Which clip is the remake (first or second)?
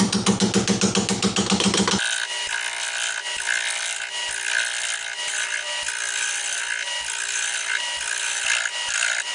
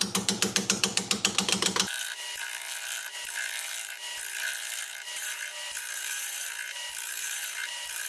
second